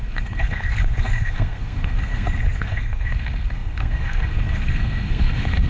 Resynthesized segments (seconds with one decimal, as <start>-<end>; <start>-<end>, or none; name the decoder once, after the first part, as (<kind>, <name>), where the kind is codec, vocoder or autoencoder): 0.0-5.7 (codec, SNAC)